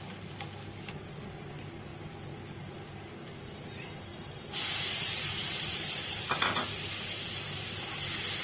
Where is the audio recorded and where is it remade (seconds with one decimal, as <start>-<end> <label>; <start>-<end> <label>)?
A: 0.0-4.1 recorded; 4.1-6.2 remade; 6.2-8.4 recorded

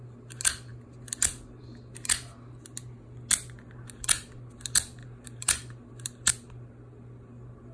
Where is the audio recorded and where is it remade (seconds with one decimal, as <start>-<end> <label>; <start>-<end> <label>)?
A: 0.0-5.0 recorded; 5.0-6.3 remade; 6.3-7.7 recorded

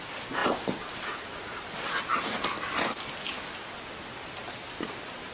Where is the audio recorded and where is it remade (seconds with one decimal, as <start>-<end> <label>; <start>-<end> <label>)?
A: 0.0-0.4 recorded; 0.4-1.1 remade; 1.1-5.3 recorded